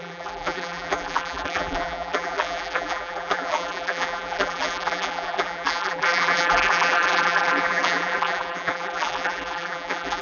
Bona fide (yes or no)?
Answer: no